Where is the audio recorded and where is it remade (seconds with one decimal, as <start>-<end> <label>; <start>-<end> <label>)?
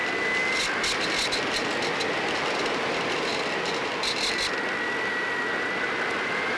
0.0-6.6 recorded